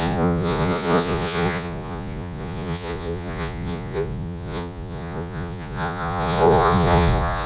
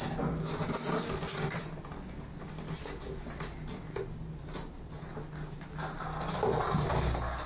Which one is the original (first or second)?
second